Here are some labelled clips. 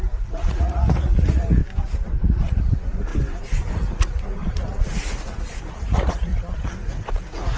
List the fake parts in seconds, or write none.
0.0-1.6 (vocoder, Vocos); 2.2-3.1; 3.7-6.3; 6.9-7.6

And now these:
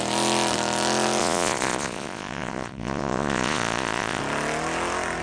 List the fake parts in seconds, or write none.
1.2-4.2 (vocoder, Vocos)

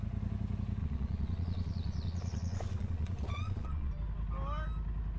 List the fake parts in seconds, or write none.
0.8-3.9 (vocoder, Vocos)